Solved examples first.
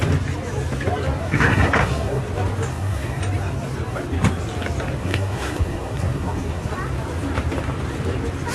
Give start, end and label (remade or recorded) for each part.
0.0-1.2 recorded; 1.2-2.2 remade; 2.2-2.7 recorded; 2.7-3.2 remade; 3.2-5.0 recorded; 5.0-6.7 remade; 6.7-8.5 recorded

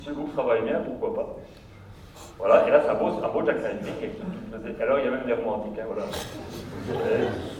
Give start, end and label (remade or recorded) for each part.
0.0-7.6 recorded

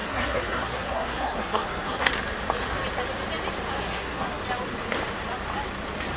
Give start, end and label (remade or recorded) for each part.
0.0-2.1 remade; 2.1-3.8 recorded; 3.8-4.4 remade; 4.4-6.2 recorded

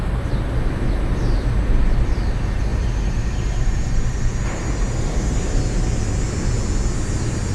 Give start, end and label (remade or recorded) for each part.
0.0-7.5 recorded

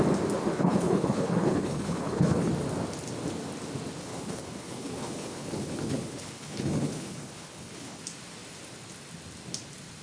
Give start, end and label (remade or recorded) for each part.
0.0-0.5 recorded; 0.5-2.5 remade; 2.5-4.0 recorded; 4.0-8.0 remade; 8.0-10.0 recorded

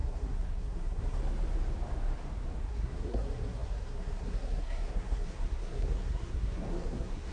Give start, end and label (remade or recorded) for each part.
0.0-1.2 remade; 1.2-2.6 recorded; 2.6-7.3 remade

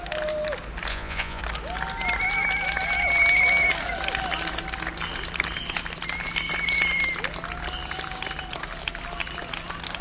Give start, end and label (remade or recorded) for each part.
0.0-0.9 recorded; 0.9-1.4 remade; 1.4-10.0 recorded

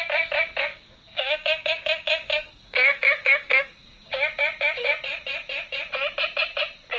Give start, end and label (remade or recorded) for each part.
0.0-0.7 recorded; 0.7-4.1 remade; 4.1-7.0 recorded